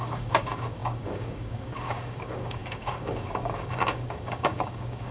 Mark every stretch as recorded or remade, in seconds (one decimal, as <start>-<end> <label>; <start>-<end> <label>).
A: 0.0-5.1 remade